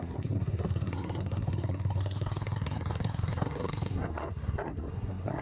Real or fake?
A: fake